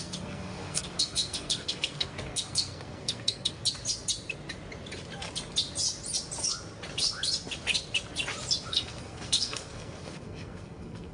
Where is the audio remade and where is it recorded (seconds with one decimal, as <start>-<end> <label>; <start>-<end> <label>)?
0.0-3.6 remade; 3.6-8.7 recorded; 8.7-11.1 remade